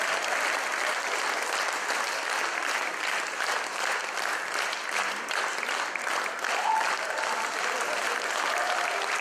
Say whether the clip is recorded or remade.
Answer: recorded